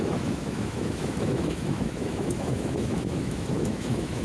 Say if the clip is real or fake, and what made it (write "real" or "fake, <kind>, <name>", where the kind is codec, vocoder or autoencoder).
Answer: fake, autoencoder, DAC-VAE